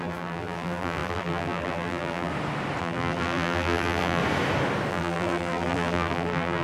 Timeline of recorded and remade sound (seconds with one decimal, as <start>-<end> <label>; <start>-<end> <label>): 0.0-2.3 remade; 2.3-2.8 recorded; 2.8-4.2 remade; 4.2-4.9 recorded; 4.9-6.6 remade